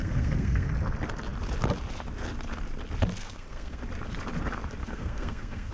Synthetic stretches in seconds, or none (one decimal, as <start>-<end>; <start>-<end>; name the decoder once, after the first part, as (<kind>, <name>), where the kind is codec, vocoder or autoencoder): 0.0-0.7 (codec, SNAC); 3.2-3.8; 4.8-5.7